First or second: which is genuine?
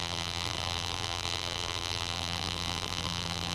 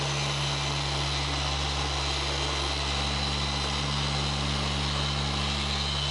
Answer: second